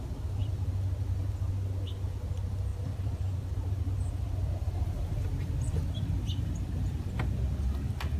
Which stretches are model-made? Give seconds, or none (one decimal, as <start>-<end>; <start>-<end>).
0.4-1.3; 2.7-7.1